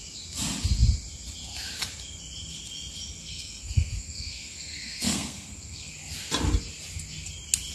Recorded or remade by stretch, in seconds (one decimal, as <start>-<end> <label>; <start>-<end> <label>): 0.0-3.2 recorded; 3.2-5.9 remade; 5.9-7.7 recorded